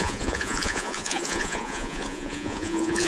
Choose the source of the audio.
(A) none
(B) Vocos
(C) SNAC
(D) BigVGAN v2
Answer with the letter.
B